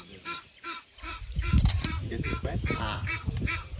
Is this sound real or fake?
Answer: fake